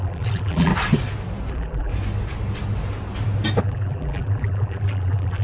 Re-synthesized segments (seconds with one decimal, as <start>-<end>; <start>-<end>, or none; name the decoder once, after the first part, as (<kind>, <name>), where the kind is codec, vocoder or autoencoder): 0.0-0.7 (vocoder, BigVGAN v2); 1.5-1.9; 3.6-5.4